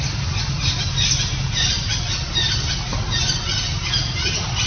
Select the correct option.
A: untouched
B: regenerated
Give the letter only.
A